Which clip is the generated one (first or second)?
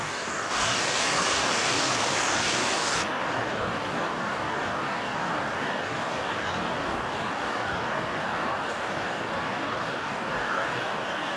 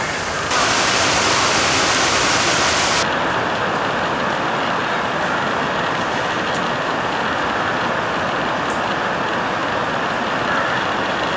first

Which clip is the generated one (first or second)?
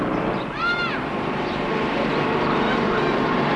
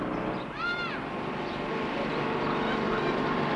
first